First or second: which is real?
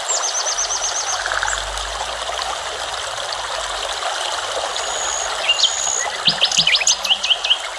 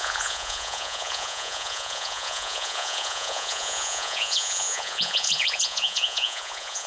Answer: first